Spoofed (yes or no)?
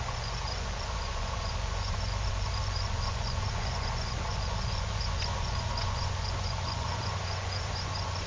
yes